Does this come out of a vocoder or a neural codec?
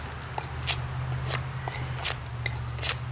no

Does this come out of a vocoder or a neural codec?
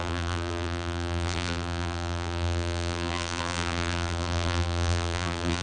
yes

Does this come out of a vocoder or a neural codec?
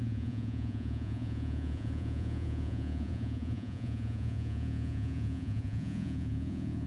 yes